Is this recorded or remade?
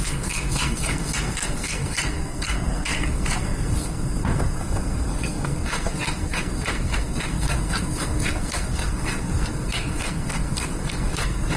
remade